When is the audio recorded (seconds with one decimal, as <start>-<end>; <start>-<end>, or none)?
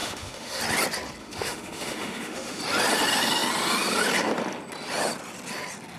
0.6-1.2; 2.6-6.0